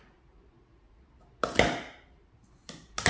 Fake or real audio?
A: real